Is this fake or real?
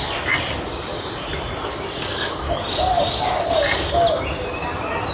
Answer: real